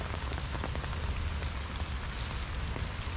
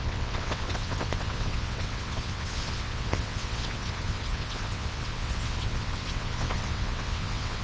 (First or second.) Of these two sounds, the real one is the first